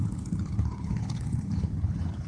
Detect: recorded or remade remade